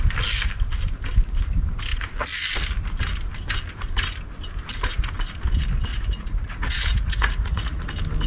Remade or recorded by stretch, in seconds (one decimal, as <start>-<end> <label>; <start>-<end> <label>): 0.0-5.9 recorded; 5.9-7.9 remade; 7.9-8.3 recorded

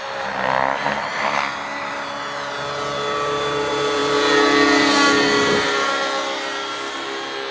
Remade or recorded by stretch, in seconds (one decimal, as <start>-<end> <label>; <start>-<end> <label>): 0.0-7.5 recorded